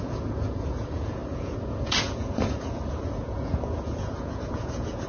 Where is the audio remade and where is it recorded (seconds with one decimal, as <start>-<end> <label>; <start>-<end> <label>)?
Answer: 0.0-5.1 remade

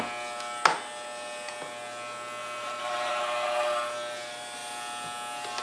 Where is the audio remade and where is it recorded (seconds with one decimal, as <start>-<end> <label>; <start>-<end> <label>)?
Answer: 0.0-2.4 recorded; 2.4-3.2 remade; 3.2-5.6 recorded